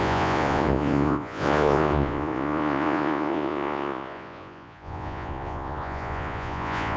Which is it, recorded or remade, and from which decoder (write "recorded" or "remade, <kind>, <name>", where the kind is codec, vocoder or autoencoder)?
remade, vocoder, Vocos